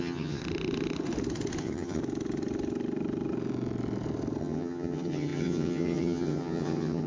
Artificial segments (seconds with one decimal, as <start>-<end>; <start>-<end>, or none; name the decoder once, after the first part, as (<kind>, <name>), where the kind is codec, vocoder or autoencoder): 0.0-0.4 (vocoder, HiFi-GAN); 1.6-2.0; 4.4-7.1